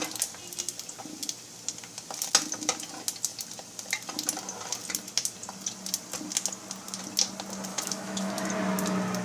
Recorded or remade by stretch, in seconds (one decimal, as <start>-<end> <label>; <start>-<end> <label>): 0.0-7.7 recorded; 7.7-8.3 remade; 8.3-9.2 recorded